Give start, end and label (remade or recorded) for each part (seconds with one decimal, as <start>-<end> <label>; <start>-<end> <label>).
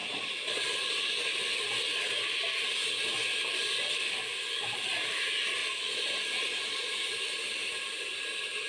0.0-0.6 remade; 0.6-5.6 recorded; 5.6-6.9 remade; 6.9-8.7 recorded